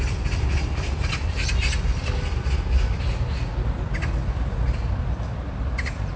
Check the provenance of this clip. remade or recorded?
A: recorded